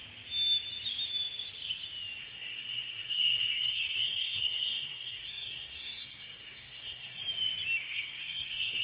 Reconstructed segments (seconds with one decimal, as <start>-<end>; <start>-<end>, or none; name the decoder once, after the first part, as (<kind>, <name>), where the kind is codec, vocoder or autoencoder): 2.2-7.2 (codec, SNAC); 7.8-8.8